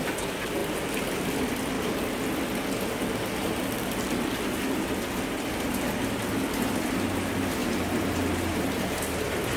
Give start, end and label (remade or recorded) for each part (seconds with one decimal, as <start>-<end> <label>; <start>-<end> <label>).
0.0-7.6 recorded; 7.6-9.0 remade; 9.0-9.6 recorded